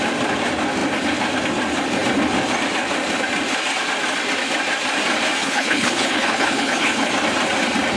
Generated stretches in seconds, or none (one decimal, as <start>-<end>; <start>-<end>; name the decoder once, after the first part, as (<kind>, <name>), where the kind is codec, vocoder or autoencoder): 5.4-7.1 (codec, HILCodec)